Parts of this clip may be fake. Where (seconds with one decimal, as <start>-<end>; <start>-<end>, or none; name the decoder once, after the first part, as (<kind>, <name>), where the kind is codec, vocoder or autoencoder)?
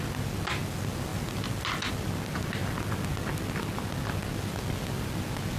none